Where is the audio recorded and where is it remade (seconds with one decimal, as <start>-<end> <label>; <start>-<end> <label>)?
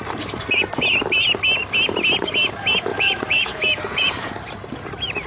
0.0-2.9 recorded; 2.9-4.3 remade; 4.3-5.3 recorded